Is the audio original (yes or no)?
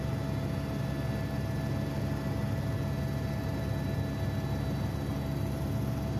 yes